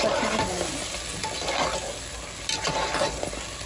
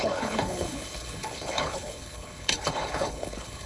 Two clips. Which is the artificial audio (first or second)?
second